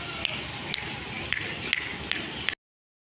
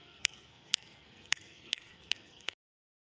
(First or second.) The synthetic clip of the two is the second